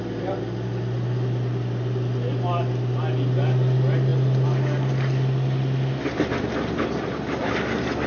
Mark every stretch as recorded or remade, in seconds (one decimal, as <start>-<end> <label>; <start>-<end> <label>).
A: 0.0-8.1 recorded